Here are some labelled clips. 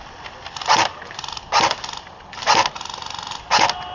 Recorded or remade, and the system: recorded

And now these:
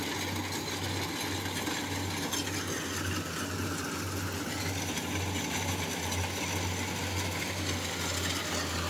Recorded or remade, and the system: recorded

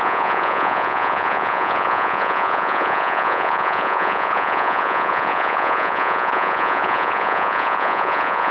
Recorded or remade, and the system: remade, vocoder, Vocos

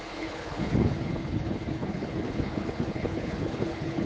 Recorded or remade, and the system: remade, codec, HILCodec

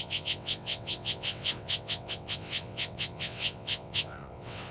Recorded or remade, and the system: remade, vocoder, WaveNeXt